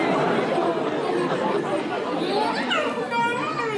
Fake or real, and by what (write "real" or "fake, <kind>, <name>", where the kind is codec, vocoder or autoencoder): real